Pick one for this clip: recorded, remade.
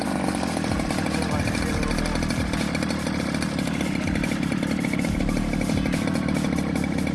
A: recorded